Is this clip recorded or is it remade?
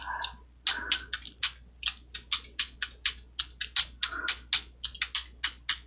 recorded